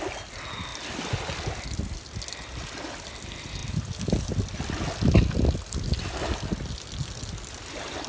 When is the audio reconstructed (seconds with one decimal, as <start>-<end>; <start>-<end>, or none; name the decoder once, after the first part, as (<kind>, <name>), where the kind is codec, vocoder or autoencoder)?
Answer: none